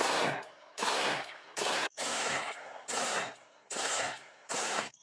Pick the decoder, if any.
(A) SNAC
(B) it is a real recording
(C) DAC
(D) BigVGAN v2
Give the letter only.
A